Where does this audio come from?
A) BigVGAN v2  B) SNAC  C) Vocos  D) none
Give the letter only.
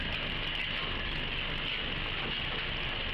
D